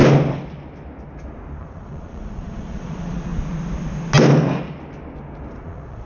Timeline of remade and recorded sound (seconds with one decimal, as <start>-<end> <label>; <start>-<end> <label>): 0.0-1.6 recorded; 1.6-3.3 remade; 3.3-5.6 recorded; 5.6-6.1 remade